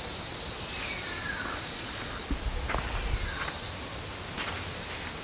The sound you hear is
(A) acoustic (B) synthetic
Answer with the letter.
A